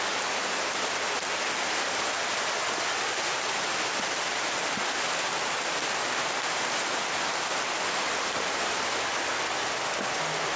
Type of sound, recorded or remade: recorded